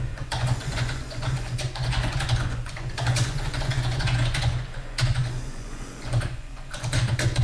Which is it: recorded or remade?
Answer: remade